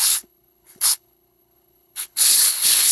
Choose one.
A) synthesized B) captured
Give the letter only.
A